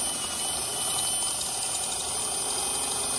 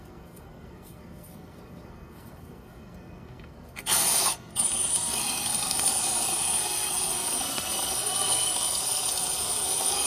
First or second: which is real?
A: first